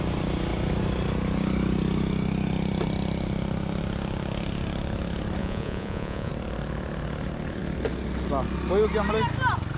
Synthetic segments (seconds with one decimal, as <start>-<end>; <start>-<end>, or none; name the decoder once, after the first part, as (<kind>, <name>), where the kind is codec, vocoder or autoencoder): 5.4-6.3 (vocoder, Vocos)

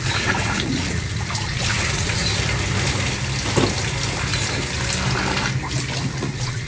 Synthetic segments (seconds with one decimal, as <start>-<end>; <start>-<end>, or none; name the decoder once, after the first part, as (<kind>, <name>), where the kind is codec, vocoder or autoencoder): 0.0-2.2 (vocoder, Vocos); 6.2-6.7

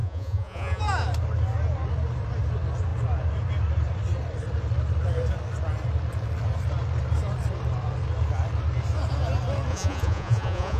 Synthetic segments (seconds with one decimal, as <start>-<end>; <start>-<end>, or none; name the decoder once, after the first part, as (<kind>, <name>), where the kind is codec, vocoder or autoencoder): 0.0-0.8 (vocoder, Vocos); 9.7-10.8

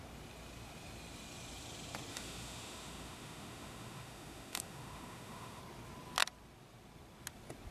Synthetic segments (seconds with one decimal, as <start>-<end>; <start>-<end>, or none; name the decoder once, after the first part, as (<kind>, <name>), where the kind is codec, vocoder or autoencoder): 2.1-5.6 (autoencoder, DAC-VAE)